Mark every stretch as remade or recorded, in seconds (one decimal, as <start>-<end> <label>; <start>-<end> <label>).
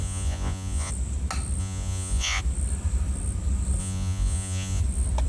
0.0-0.9 remade; 0.9-1.6 recorded; 1.6-2.4 remade; 2.4-3.8 recorded; 3.8-4.8 remade; 4.8-5.3 recorded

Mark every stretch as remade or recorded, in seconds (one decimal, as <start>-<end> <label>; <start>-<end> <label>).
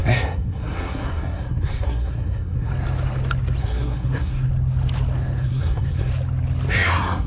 0.0-2.7 remade; 2.7-3.6 recorded; 3.6-4.5 remade; 4.5-5.4 recorded; 5.4-6.1 remade; 6.1-6.7 recorded; 6.7-7.3 remade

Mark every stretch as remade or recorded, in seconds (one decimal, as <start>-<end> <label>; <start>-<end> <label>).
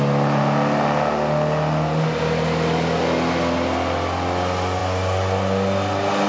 0.0-6.3 recorded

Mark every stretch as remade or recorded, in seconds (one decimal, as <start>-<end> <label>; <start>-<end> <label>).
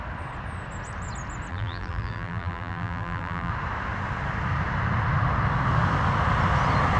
0.0-1.5 recorded; 1.5-3.5 remade; 3.5-7.0 recorded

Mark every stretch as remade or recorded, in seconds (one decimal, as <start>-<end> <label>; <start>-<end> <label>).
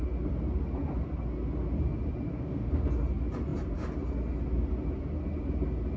0.0-2.3 recorded; 2.3-2.9 remade; 2.9-6.0 recorded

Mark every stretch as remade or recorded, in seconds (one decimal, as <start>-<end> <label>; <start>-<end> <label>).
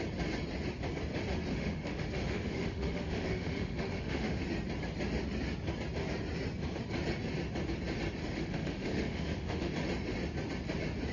0.0-1.5 recorded; 1.5-4.4 remade; 4.4-8.2 recorded; 8.2-9.7 remade; 9.7-11.1 recorded